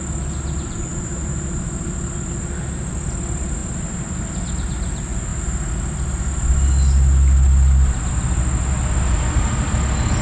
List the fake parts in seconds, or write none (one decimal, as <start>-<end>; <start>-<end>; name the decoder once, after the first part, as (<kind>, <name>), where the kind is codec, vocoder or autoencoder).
none